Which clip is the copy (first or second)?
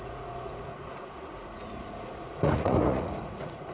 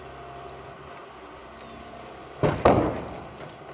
first